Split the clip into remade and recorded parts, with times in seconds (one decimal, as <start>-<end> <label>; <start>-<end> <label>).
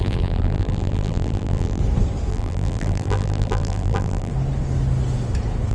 0.0-1.8 remade; 1.8-2.3 recorded; 2.3-4.3 remade; 4.3-5.7 recorded